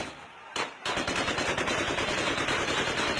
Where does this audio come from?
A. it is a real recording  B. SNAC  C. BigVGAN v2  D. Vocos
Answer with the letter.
A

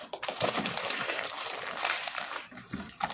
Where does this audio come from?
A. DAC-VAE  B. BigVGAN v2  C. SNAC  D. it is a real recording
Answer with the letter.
B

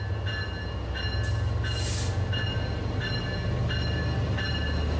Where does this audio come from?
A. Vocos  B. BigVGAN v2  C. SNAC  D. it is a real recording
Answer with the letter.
D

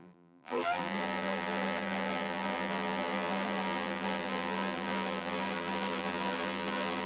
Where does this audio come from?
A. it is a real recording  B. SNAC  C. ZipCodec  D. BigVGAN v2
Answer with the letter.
D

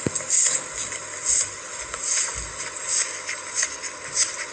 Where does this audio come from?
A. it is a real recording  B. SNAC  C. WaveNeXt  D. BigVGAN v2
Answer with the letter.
A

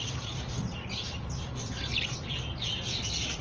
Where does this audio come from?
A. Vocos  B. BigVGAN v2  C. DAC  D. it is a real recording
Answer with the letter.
B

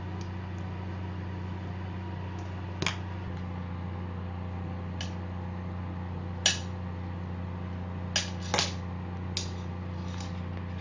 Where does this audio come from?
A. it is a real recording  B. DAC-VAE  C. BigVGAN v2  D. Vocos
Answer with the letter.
A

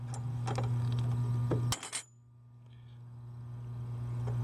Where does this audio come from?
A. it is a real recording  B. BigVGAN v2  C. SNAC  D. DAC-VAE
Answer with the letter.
A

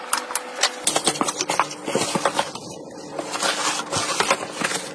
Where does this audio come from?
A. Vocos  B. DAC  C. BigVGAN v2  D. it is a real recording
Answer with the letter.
D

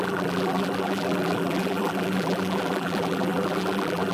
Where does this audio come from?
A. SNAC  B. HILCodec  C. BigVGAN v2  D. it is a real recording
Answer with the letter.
C